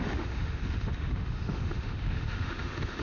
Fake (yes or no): yes